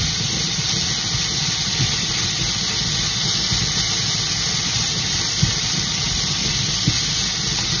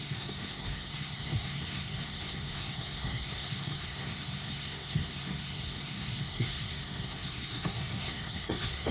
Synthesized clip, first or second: second